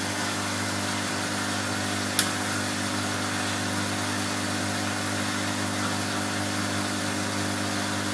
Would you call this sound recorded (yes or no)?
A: yes